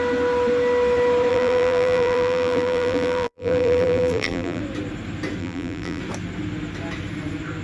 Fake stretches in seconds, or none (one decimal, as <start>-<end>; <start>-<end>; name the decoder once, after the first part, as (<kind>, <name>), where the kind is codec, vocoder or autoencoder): 1.3-4.6 (vocoder, BigVGAN v2); 5.4-6.0